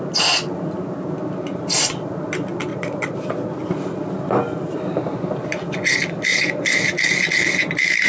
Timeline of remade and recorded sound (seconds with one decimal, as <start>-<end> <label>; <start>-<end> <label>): 0.0-2.7 recorded; 2.7-3.5 remade; 3.5-6.3 recorded; 6.3-6.8 remade; 6.8-8.1 recorded